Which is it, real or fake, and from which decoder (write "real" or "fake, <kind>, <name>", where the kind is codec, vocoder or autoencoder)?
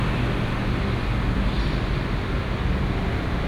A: real